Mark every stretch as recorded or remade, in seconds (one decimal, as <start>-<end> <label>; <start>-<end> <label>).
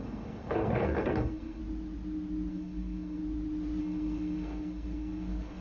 0.0-1.6 remade; 1.6-2.5 recorded; 2.5-3.2 remade; 3.2-3.8 recorded; 3.8-5.6 remade